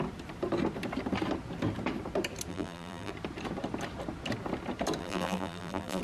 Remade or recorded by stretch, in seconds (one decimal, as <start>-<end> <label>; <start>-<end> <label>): 0.0-2.5 recorded; 2.5-3.1 remade; 3.1-5.0 recorded; 5.0-6.0 remade